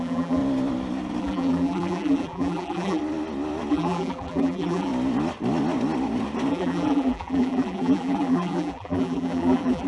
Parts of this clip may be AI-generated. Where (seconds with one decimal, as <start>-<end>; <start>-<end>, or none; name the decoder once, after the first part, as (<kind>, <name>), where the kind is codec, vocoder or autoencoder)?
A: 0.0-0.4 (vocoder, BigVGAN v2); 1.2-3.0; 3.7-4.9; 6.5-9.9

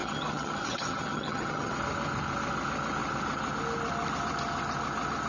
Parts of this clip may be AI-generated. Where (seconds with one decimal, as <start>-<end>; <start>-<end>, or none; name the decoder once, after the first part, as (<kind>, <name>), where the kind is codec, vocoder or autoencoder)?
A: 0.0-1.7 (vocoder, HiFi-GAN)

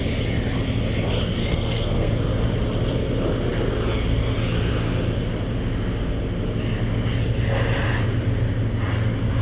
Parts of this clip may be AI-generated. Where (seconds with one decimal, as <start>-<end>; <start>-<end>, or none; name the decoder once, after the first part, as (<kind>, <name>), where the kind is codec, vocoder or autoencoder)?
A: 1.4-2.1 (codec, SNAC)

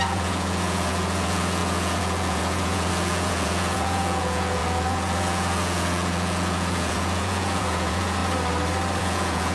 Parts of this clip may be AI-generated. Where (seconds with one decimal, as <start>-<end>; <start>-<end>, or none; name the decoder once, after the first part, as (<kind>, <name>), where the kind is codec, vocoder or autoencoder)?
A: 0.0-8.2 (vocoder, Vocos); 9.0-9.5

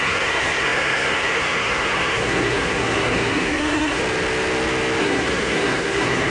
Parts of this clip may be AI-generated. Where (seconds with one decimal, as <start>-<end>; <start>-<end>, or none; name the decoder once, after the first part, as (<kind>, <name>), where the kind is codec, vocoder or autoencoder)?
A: 0.0-4.0 (codec, SNAC); 5.0-6.3